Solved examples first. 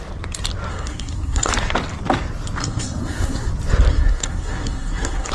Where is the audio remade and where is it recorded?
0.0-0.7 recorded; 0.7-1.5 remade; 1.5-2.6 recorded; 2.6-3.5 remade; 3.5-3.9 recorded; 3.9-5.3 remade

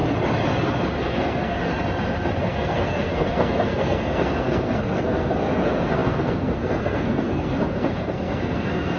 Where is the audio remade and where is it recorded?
0.0-1.0 recorded; 1.0-1.7 remade; 1.7-2.4 recorded; 2.4-9.0 remade

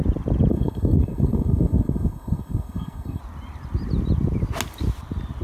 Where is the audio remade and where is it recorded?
0.0-0.5 recorded; 0.5-3.2 remade; 3.2-5.4 recorded

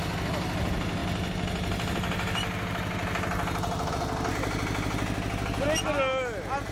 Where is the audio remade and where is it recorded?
0.0-6.7 recorded

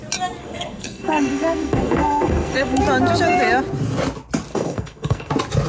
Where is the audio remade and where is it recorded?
0.0-0.4 recorded; 0.4-2.8 remade; 2.8-4.5 recorded; 4.5-5.3 remade; 5.3-5.7 recorded